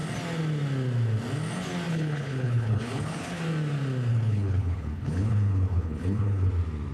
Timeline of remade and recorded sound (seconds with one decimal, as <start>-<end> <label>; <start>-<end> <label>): 0.0-1.9 recorded; 1.9-3.4 remade; 3.4-4.1 recorded; 4.1-6.5 remade; 6.5-6.9 recorded